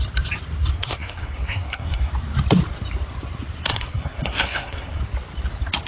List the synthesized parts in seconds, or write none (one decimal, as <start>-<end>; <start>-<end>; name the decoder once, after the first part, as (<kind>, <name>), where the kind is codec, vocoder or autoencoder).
0.7-2.1 (codec, SNAC); 3.7-5.0